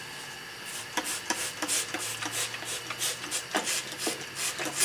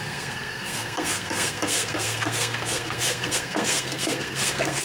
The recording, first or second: first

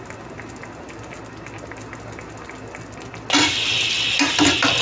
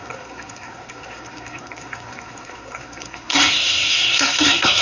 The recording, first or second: first